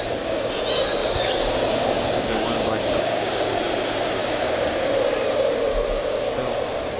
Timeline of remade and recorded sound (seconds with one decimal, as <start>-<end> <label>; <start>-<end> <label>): 0.0-1.0 recorded; 1.0-3.6 remade; 3.6-4.2 recorded; 4.2-4.9 remade; 4.9-5.7 recorded; 5.7-6.3 remade; 6.3-7.0 recorded